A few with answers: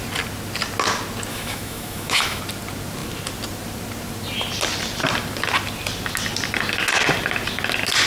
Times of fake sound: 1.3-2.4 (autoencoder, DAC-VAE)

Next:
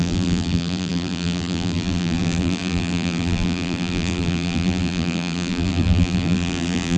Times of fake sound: 0.0-7.0 (vocoder, BigVGAN v2)

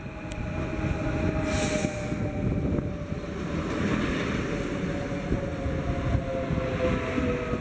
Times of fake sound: none

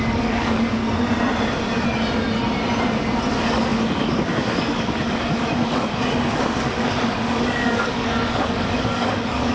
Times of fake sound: 0.0-0.8 (codec, DAC); 3.3-9.5

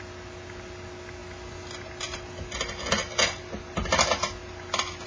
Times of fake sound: none

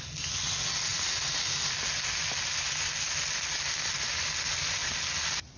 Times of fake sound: none

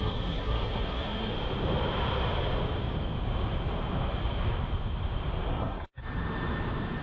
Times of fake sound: 0.0-1.3 (codec, SNAC); 5.5-6.0